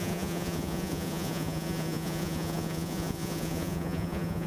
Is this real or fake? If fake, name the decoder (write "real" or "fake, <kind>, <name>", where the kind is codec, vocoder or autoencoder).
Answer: fake, vocoder, Vocos